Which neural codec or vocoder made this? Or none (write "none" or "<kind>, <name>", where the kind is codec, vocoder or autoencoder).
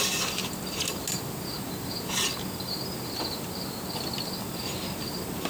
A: none